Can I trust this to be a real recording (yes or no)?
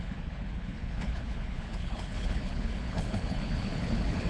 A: no